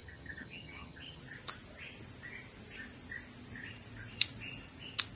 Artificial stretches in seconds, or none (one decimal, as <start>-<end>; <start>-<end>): 0.0-1.2